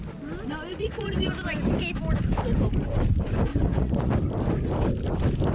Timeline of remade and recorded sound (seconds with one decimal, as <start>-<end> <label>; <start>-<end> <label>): 0.0-0.7 recorded; 0.7-1.3 remade; 1.3-3.5 recorded; 3.5-4.1 remade; 4.1-5.5 recorded

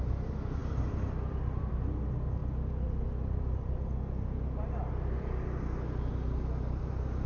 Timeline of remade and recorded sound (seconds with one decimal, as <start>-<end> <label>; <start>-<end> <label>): 0.0-7.3 recorded

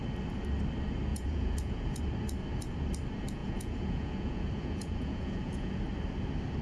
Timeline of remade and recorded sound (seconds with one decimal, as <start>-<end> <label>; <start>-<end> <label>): 0.0-1.1 recorded; 1.1-2.0 remade; 2.0-3.4 recorded; 3.4-5.8 remade; 5.8-6.6 recorded

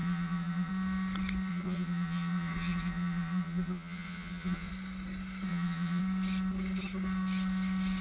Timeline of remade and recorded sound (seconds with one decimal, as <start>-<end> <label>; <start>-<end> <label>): 0.0-0.7 remade; 0.7-1.5 recorded; 1.5-4.7 remade; 4.7-5.5 recorded; 5.5-6.0 remade; 6.0-8.0 recorded

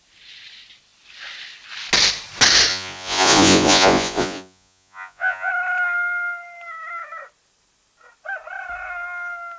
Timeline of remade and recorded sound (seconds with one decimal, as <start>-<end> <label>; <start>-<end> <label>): 0.0-2.7 recorded; 2.7-5.5 remade; 5.5-9.6 recorded

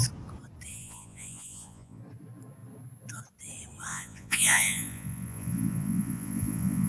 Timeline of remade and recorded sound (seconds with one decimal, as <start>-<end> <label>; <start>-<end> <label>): 0.0-0.7 recorded; 0.7-2.0 remade; 2.0-3.9 recorded; 3.9-6.9 remade